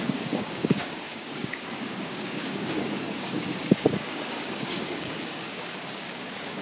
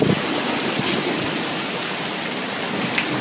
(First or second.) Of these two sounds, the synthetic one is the first